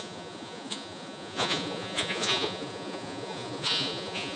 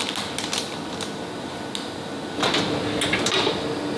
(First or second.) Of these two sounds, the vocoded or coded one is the first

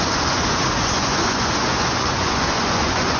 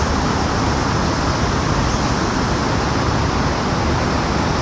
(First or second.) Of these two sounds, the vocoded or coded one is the first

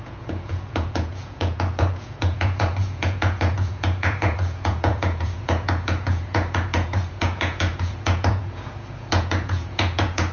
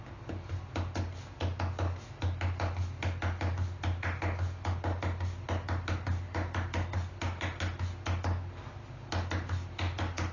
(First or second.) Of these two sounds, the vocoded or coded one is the first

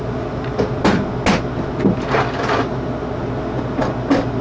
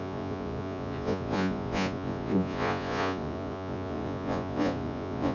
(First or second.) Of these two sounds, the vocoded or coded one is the second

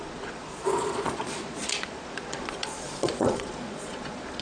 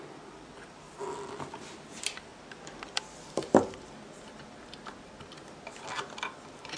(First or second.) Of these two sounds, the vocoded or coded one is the first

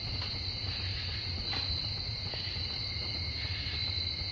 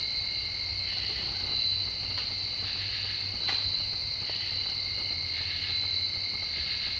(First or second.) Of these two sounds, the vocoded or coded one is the first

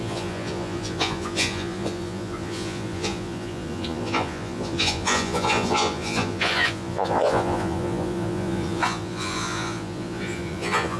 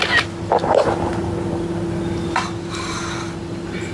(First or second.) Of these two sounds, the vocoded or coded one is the first